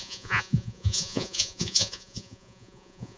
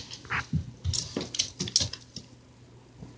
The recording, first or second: second